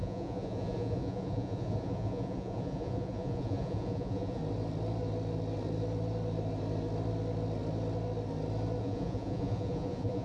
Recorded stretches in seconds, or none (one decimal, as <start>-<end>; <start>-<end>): 4.4-8.8